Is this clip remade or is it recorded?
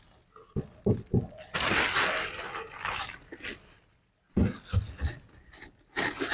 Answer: recorded